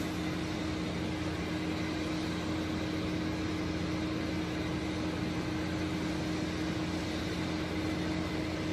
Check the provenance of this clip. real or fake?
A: real